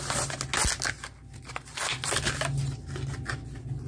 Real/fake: real